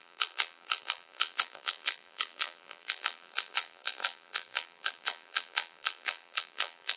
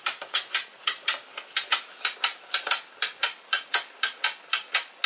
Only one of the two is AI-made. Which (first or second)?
first